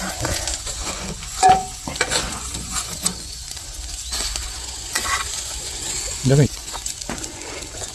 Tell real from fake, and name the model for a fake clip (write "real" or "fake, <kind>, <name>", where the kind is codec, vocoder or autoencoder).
fake, vocoder, Vocos